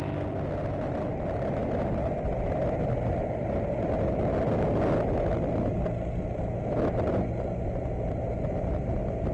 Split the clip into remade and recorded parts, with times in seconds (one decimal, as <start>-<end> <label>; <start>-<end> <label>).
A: 0.0-9.3 recorded